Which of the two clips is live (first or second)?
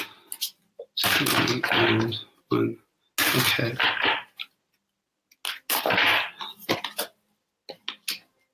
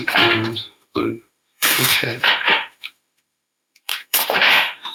first